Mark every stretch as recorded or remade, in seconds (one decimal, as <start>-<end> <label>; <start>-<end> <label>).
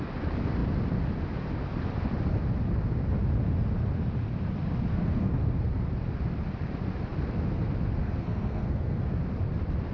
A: 0.0-4.9 recorded; 4.9-5.7 remade; 5.7-8.0 recorded; 8.0-9.2 remade; 9.2-9.9 recorded